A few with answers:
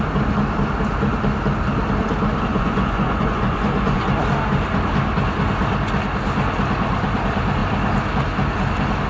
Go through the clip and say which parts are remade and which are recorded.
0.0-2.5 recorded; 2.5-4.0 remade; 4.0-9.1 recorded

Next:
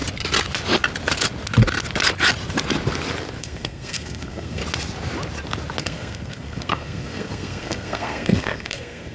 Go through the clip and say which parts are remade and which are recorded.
0.0-3.4 recorded; 3.4-4.6 remade; 4.6-5.8 recorded; 5.8-9.1 remade